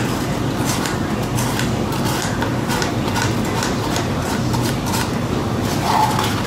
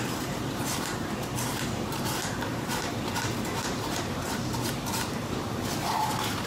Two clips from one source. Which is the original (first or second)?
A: first